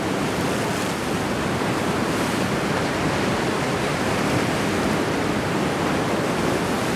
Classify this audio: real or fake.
real